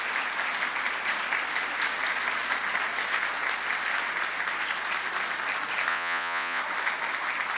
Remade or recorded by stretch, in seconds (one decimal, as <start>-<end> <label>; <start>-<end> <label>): 0.0-5.9 recorded; 5.9-6.6 remade; 6.6-7.6 recorded